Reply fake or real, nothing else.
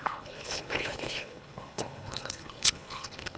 fake